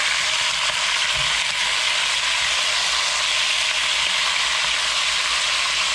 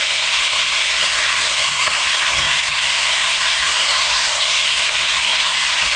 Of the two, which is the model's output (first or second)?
second